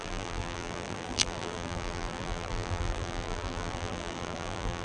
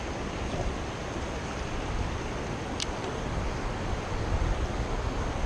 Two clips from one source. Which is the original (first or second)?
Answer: second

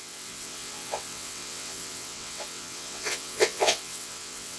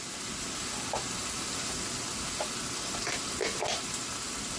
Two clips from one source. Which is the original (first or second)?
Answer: second